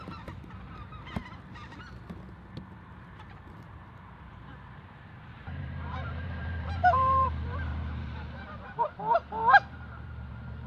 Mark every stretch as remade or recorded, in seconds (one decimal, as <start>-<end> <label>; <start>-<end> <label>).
0.0-1.2 remade; 1.2-4.2 recorded; 4.2-10.7 remade